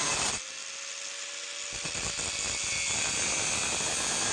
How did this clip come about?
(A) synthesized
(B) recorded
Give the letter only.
B